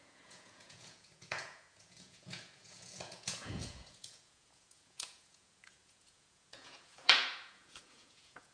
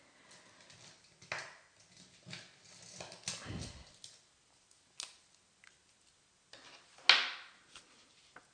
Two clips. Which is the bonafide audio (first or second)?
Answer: second